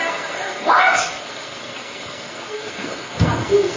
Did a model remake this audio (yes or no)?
yes